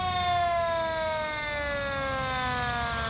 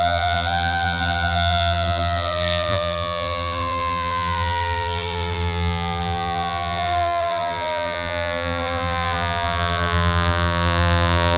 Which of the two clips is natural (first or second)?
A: first